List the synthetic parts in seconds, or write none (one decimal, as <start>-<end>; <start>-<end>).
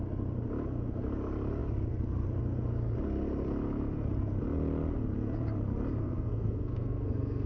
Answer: 6.0-7.5